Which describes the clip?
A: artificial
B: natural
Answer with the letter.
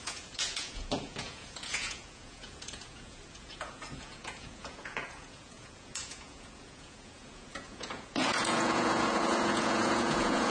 A